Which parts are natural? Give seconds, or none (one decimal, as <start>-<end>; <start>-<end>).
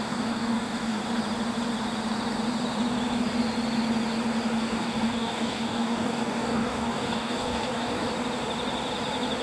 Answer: 1.0-4.6; 8.1-9.4